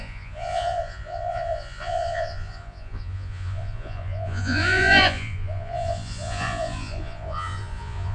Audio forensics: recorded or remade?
remade